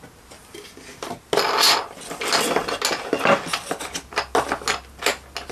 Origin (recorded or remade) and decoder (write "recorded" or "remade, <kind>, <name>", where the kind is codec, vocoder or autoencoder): recorded